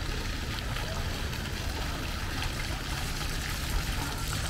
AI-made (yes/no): no